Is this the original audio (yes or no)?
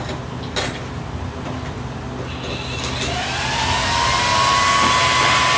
yes